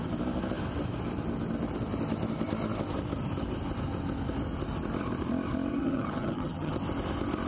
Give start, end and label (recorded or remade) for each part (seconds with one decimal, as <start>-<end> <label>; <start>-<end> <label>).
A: 0.0-5.7 recorded; 5.7-6.7 remade; 6.7-7.5 recorded

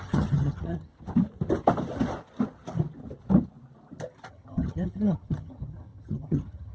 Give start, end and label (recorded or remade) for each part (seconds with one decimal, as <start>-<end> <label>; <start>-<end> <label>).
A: 0.0-0.9 remade; 0.9-4.3 recorded; 4.3-6.7 remade